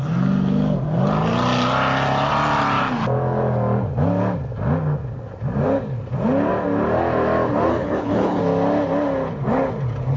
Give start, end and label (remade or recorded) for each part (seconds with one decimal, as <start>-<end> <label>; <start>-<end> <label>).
0.0-7.7 recorded; 7.7-8.4 remade; 8.4-10.2 recorded